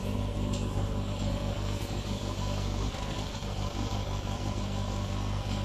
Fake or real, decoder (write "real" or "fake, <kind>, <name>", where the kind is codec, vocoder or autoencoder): fake, codec, SNAC